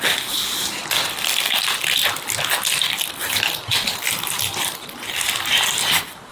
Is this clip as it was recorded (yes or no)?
yes